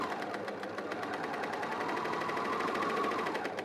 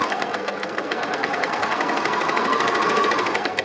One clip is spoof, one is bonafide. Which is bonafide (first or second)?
first